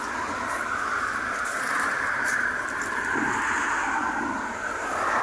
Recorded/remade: remade